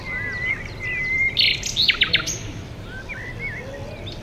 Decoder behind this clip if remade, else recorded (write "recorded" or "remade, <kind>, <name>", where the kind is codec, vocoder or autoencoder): recorded